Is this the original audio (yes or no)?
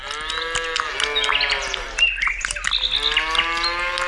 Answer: yes